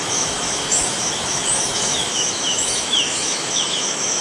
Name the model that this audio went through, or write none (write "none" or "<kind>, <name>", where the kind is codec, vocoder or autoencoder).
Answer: autoencoder, DAC-VAE